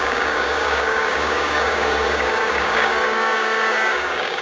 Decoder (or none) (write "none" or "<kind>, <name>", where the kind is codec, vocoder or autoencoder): codec, DAC